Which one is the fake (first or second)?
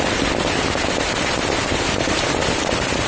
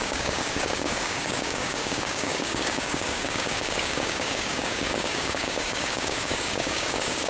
second